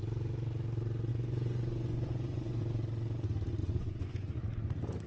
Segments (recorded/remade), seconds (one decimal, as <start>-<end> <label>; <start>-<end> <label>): 0.0-1.1 recorded; 1.1-2.6 remade; 2.6-3.6 recorded; 3.6-4.4 remade; 4.4-5.1 recorded